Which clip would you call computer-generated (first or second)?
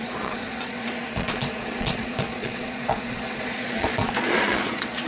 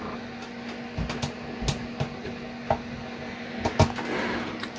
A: first